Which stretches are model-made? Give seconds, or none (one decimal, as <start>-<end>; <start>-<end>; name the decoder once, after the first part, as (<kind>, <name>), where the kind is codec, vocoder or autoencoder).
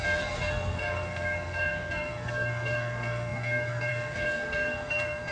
0.0-5.3 (codec, SNAC)